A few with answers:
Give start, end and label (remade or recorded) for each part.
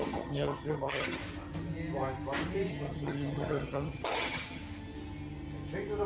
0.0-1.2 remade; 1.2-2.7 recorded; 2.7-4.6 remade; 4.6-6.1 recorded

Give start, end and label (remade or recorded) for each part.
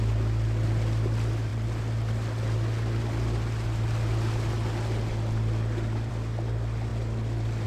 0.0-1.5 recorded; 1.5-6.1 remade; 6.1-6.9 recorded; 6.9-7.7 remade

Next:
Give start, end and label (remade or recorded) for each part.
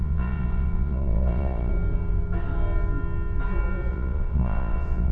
0.0-1.7 remade; 1.7-3.9 recorded; 3.9-5.1 remade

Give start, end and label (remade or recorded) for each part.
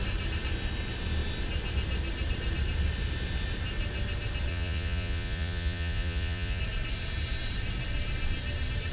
0.0-4.5 recorded; 4.5-6.6 remade; 6.6-8.9 recorded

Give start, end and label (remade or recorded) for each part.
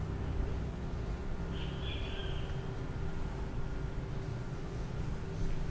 0.0-0.7 recorded; 0.7-1.4 remade; 1.4-4.3 recorded; 4.3-5.1 remade; 5.1-5.7 recorded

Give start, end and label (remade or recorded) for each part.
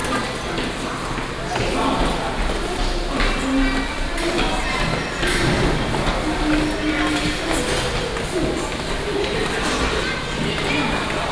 0.0-11.3 recorded